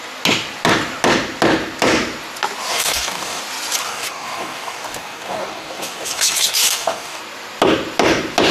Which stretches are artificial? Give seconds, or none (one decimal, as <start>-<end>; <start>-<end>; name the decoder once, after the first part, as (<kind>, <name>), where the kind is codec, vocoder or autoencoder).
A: 2.7-3.4 (codec, DAC); 3.8-7.2